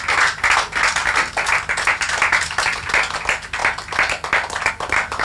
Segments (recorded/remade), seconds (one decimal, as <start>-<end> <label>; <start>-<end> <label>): 0.0-5.2 recorded